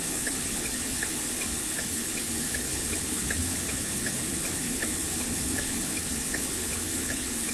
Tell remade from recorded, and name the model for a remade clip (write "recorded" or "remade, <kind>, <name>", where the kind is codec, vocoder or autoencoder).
remade, codec, HILCodec